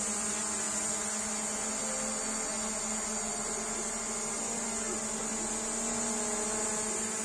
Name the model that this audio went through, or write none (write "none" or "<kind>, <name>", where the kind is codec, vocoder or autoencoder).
none